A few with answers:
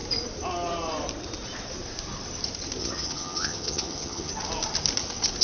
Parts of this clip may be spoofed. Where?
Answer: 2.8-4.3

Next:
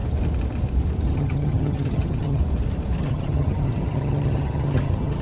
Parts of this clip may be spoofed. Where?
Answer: 1.1-2.4; 3.0-5.2

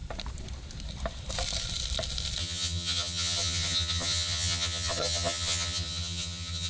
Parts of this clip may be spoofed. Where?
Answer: 2.4-6.7

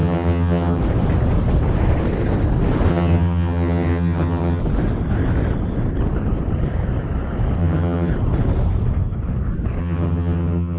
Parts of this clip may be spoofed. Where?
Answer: 0.0-0.8; 2.9-4.6; 7.6-8.1; 9.8-10.8

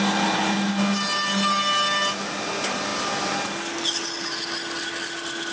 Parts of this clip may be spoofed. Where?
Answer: none